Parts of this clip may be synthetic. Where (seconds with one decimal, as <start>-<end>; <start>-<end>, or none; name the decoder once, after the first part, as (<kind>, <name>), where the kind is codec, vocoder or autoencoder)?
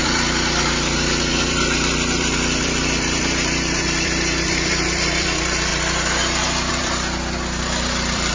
0.0-5.7 (vocoder, BigVGAN v2); 6.7-8.3